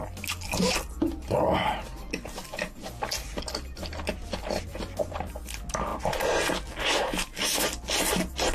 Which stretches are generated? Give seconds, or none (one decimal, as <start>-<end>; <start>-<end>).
none